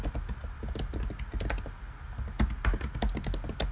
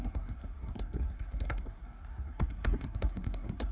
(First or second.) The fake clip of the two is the second